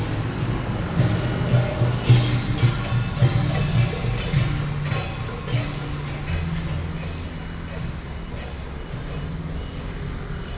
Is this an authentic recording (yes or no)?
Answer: yes